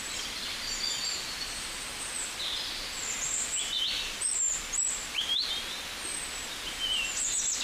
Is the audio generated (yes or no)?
no